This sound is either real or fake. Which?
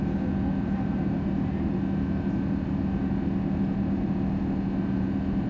real